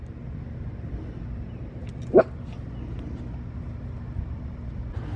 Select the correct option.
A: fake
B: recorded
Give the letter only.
B